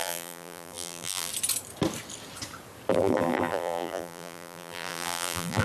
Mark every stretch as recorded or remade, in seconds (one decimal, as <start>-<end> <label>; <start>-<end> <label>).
0.0-1.3 remade; 1.3-2.9 recorded; 2.9-5.6 remade